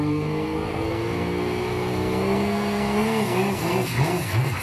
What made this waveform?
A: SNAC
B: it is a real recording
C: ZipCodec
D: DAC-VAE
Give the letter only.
A